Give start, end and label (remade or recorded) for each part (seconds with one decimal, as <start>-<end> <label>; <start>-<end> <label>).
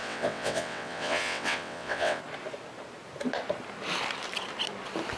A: 0.0-2.2 remade; 2.2-5.2 recorded